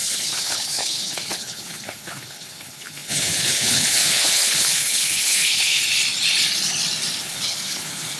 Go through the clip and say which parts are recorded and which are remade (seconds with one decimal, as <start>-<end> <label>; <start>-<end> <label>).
0.0-5.8 remade; 5.8-7.2 recorded; 7.2-8.2 remade